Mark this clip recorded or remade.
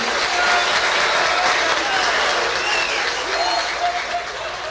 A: recorded